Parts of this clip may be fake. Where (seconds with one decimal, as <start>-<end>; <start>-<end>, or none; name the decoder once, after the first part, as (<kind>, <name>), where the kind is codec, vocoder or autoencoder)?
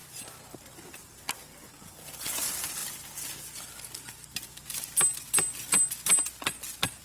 none